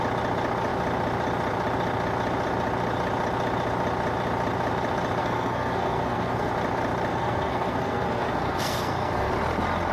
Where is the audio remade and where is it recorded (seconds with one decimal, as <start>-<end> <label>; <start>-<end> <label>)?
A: 0.0-5.2 recorded; 5.2-6.5 remade; 6.5-7.1 recorded; 7.1-9.3 remade; 9.3-9.9 recorded